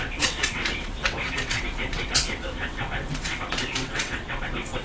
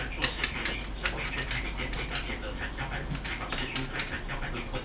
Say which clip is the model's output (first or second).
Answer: first